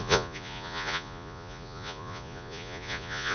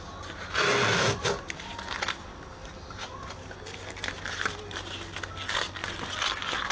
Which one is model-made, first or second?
first